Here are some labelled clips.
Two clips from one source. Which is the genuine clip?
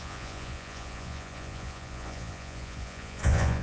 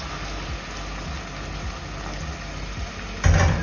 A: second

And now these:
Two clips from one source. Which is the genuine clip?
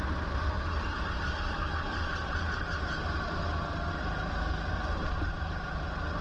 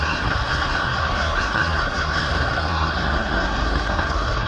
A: first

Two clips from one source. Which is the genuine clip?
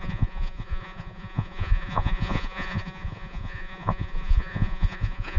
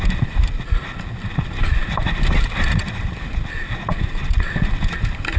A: second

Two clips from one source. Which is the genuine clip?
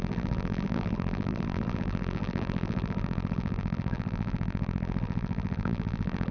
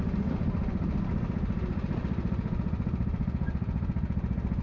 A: second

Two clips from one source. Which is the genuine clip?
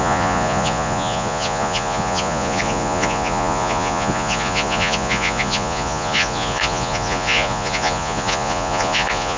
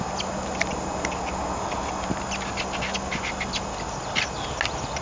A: second